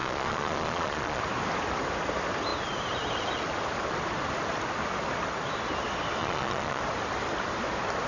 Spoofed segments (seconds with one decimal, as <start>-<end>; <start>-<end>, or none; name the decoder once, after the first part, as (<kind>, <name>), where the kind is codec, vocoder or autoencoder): 0.0-1.2 (vocoder, Vocos); 6.2-6.8